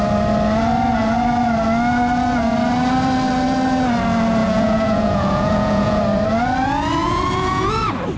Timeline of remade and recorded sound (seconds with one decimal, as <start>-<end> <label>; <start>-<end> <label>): 0.0-4.4 recorded; 4.4-6.0 remade; 6.0-7.0 recorded; 7.0-7.7 remade; 7.7-8.2 recorded